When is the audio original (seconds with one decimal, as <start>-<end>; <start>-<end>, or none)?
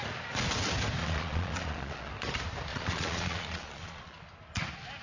0.0-1.0; 2.1-2.7; 4.2-5.0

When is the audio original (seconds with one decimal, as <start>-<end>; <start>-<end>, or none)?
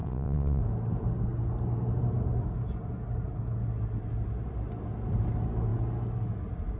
0.6-6.8